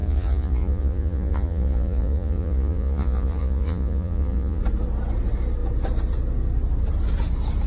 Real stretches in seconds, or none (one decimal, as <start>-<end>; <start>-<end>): 4.6-7.7